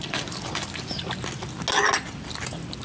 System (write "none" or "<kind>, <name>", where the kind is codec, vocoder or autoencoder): none